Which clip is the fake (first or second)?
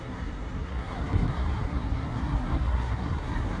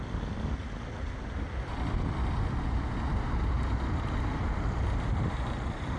first